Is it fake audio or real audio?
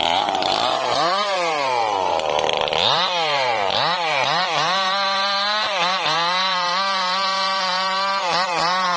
fake